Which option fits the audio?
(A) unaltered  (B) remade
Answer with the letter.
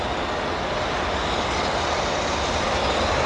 A